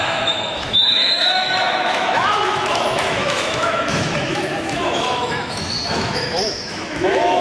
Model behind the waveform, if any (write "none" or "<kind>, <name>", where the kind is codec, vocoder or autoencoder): autoencoder, DAC-VAE